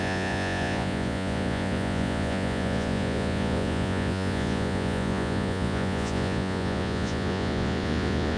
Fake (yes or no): yes